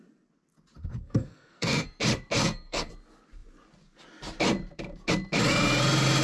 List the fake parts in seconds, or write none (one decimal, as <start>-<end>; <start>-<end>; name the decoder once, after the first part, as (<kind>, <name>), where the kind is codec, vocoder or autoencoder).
0.8-2.0 (codec, SNAC); 2.4-2.9